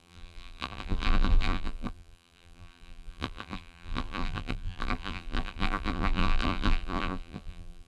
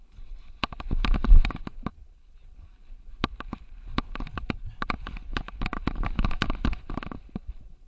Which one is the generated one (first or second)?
first